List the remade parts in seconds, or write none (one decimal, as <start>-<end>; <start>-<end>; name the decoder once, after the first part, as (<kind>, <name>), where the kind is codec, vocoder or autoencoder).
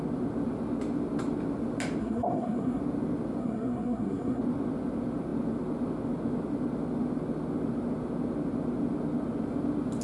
2.0-2.8 (codec, SNAC); 3.4-4.4